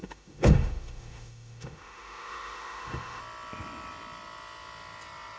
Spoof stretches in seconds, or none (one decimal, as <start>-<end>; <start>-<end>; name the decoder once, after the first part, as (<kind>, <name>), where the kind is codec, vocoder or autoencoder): 0.0-3.2 (autoencoder, DAC-VAE)